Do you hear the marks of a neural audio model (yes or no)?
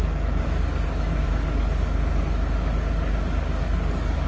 yes